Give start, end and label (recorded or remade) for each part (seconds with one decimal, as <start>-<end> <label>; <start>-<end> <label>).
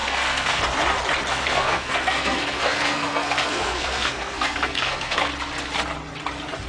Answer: 0.0-0.6 remade; 0.6-1.3 recorded; 1.3-5.3 remade; 5.3-6.7 recorded